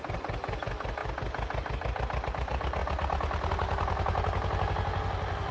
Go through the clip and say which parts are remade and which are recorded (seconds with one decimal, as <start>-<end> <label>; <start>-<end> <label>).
0.0-5.5 recorded